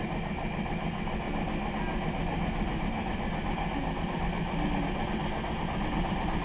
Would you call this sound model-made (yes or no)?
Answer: no